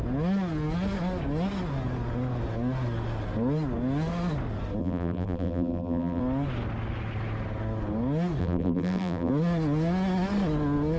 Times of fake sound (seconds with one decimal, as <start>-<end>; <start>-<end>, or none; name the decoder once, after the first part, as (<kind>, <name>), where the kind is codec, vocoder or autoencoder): 4.8-6.2 (vocoder, BigVGAN v2); 8.4-9.3